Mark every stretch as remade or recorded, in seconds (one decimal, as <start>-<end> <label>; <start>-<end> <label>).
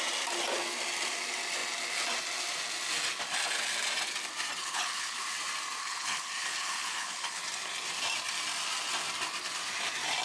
0.0-4.6 recorded; 4.6-5.2 remade; 5.2-5.8 recorded; 5.8-7.4 remade; 7.4-10.2 recorded